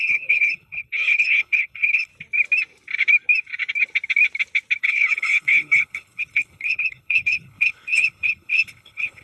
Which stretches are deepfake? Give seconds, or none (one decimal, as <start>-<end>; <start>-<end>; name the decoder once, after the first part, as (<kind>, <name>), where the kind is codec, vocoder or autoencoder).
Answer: 0.0-2.1 (codec, HILCodec); 4.8-9.2